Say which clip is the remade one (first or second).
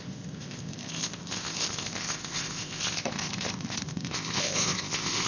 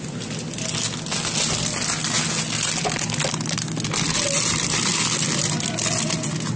first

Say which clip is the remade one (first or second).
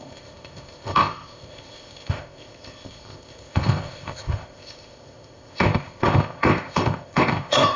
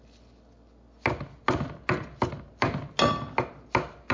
first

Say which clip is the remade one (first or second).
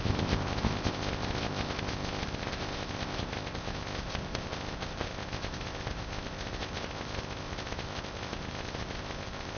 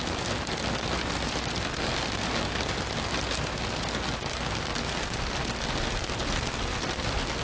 first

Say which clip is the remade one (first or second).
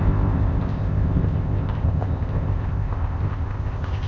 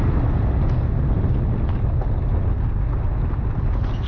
first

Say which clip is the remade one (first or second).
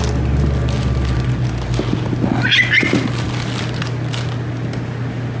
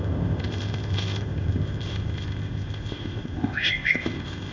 second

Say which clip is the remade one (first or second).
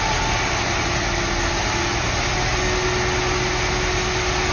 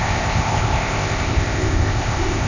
second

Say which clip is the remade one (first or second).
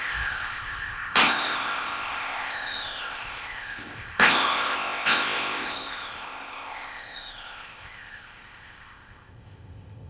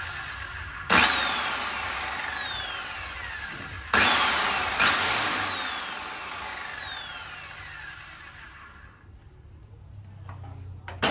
first